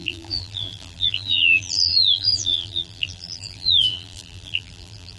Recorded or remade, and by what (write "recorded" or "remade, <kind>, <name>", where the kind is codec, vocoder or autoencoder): remade, vocoder, BigVGAN v2